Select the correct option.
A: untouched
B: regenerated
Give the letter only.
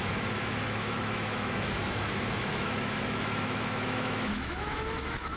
B